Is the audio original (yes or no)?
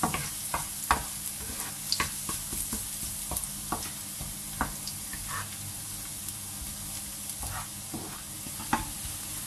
yes